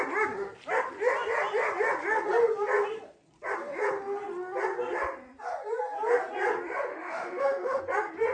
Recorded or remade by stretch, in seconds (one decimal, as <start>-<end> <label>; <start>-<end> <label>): 0.0-6.9 recorded; 6.9-7.8 remade; 7.8-8.3 recorded